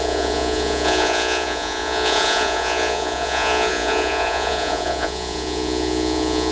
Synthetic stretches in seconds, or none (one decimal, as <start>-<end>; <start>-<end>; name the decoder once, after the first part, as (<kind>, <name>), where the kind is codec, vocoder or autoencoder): 0.0-6.5 (vocoder, Vocos)